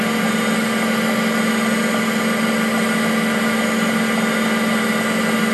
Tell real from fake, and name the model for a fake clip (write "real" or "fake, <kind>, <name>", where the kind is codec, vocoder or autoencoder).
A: real